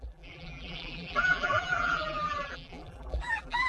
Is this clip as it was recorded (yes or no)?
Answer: no